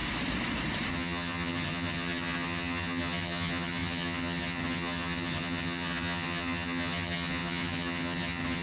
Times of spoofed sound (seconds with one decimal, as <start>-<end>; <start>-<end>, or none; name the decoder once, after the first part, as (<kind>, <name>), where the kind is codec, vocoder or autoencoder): 0.9-8.6 (vocoder, HiFi-GAN)